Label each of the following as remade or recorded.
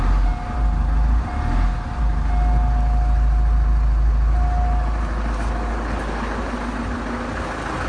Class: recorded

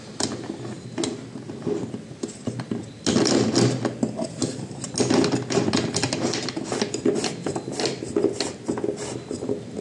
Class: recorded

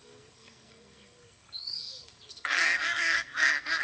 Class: remade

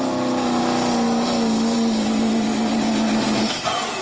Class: recorded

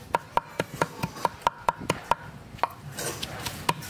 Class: recorded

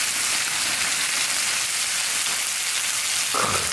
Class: recorded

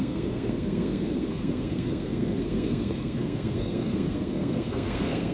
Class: remade